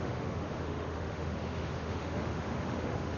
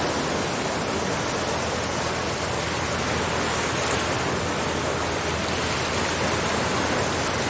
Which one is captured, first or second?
second